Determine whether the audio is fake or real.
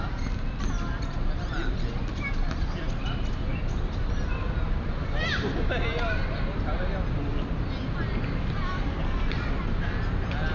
real